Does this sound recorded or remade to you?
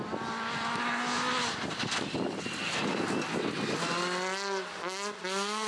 recorded